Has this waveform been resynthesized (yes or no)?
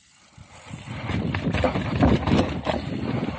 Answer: no